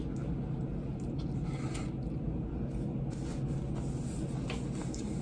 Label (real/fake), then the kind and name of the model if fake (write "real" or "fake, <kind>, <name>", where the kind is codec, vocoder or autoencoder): real